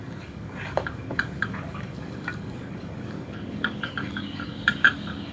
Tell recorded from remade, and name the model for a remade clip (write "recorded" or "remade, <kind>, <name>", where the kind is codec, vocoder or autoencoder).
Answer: remade, codec, DAC